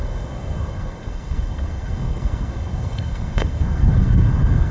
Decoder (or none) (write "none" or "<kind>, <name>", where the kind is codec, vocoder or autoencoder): codec, SNAC